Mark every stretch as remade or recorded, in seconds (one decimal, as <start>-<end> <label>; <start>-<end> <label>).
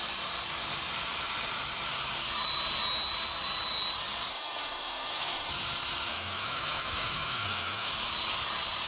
0.0-4.3 recorded; 4.3-5.5 remade; 5.5-6.1 recorded; 6.1-7.9 remade; 7.9-8.9 recorded